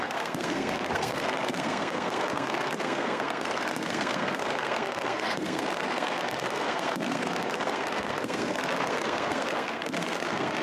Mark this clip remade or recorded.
remade